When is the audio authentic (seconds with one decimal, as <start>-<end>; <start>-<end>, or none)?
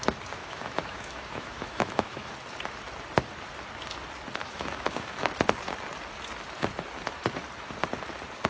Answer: 0.0-0.4; 2.3-4.4; 5.3-8.5